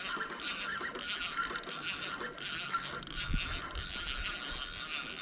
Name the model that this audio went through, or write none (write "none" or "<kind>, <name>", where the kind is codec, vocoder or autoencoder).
none